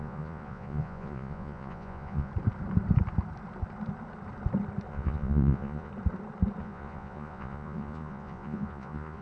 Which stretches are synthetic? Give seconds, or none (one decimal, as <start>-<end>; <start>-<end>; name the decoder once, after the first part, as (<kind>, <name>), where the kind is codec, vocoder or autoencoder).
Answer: 0.0-2.3 (vocoder, Vocos); 4.9-5.9; 6.6-9.2